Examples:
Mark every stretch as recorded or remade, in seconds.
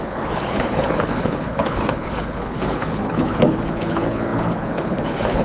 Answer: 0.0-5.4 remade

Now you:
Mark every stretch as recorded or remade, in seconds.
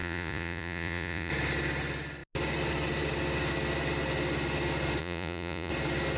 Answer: 0.0-1.3 remade; 1.3-5.0 recorded; 5.0-5.7 remade; 5.7-6.2 recorded